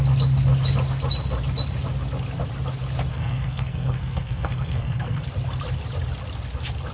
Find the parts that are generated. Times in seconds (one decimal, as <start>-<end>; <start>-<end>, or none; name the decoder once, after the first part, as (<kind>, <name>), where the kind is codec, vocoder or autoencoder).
3.1-5.2 (codec, SNAC)